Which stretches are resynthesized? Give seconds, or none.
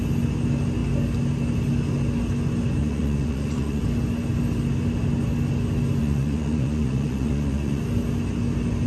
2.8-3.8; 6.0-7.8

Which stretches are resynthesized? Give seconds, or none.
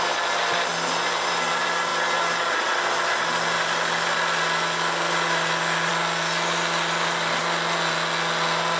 none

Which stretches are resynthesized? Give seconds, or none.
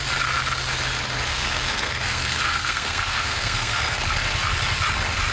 1.3-4.0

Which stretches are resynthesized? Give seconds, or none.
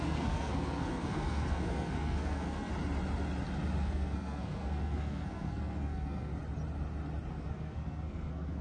0.0-2.7; 3.8-6.3; 7.3-8.6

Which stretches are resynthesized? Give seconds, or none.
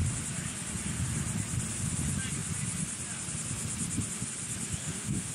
4.8-5.3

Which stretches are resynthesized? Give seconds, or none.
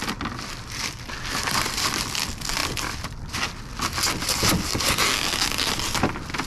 none